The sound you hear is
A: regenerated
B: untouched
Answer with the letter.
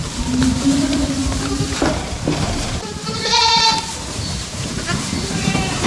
A